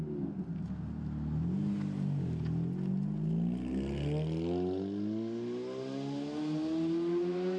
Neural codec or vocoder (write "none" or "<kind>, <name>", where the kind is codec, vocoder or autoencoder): none